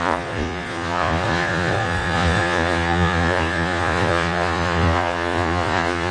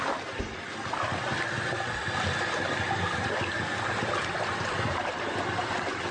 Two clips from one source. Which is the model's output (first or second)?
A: first